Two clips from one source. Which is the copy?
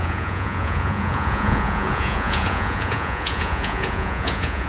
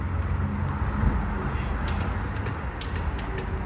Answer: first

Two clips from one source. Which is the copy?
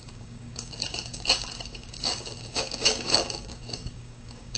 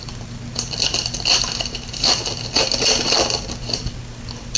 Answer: first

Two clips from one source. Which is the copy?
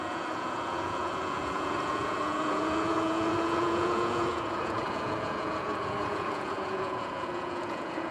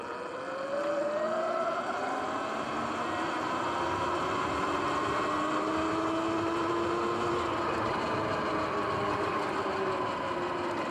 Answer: first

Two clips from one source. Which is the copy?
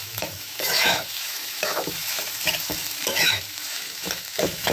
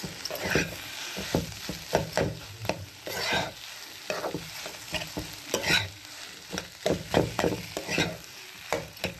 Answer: first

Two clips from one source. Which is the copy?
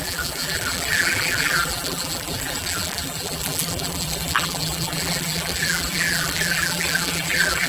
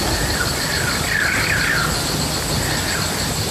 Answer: first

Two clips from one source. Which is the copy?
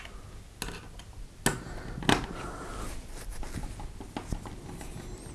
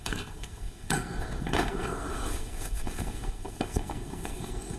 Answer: second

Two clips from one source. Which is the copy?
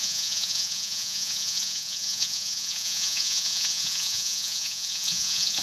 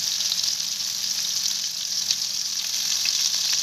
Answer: first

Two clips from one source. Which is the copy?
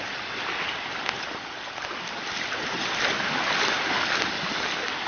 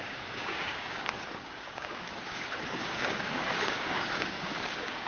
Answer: second